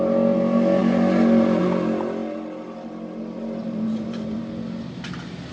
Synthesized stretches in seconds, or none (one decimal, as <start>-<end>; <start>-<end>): 3.6-4.4